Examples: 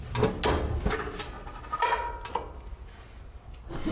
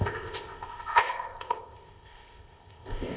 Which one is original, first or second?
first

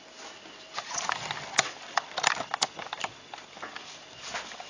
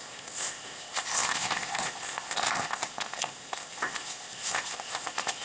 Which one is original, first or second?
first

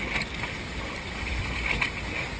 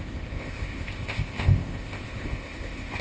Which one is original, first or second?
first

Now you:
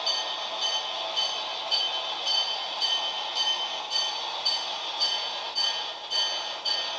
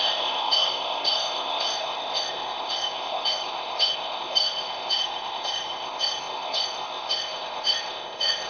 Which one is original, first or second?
first